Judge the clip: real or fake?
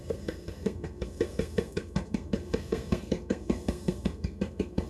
fake